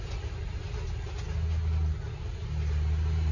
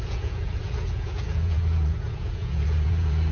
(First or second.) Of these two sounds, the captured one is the first